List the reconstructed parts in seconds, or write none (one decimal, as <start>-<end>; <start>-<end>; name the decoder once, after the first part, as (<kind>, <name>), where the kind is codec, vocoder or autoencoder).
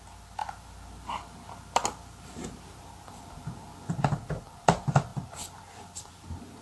none